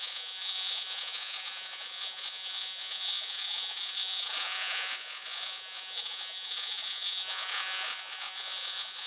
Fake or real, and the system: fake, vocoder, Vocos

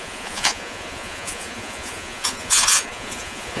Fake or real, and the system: fake, vocoder, Vocos